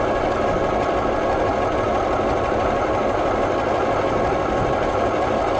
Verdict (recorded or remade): recorded